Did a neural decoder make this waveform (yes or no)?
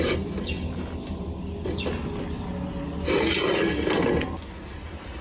no